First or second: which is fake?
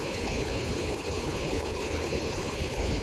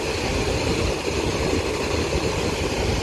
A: first